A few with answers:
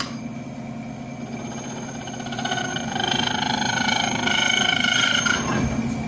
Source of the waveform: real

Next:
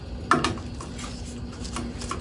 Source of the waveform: real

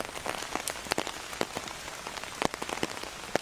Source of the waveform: real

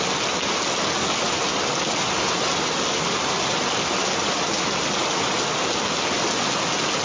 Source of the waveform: real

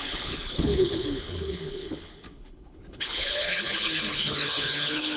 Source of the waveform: fake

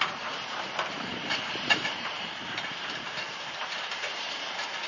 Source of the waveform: fake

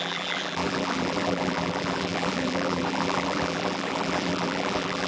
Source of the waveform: fake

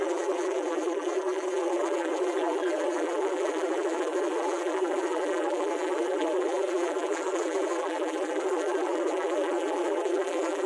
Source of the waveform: fake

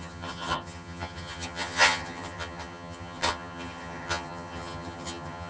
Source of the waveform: fake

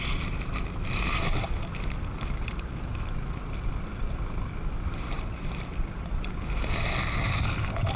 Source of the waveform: real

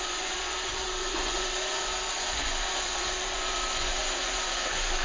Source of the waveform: fake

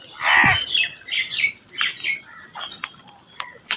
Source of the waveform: fake